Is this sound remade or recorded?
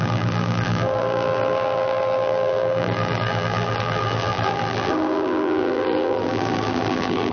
remade